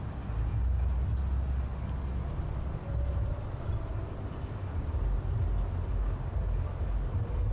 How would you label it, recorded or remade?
recorded